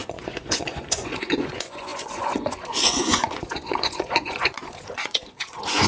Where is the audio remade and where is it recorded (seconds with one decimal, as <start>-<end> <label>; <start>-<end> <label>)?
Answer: 0.0-5.9 remade